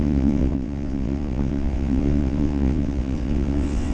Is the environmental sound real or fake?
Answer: fake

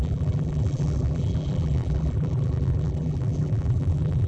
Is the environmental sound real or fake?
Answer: fake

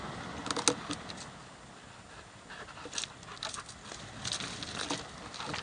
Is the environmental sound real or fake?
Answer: real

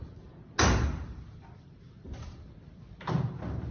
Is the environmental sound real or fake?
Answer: real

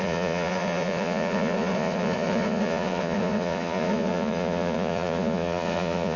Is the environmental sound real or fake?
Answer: fake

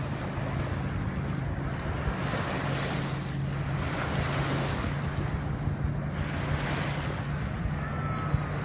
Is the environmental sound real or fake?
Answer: real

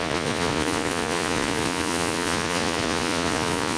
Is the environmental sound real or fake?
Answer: fake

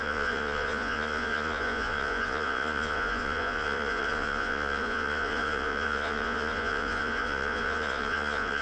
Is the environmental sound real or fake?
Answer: fake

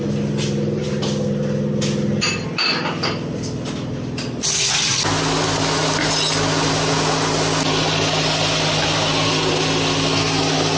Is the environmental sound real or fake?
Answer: real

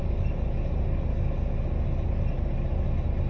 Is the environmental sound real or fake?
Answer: real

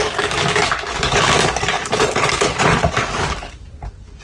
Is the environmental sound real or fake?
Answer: fake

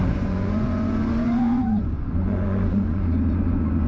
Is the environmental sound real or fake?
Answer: fake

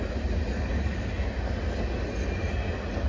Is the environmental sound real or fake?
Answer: real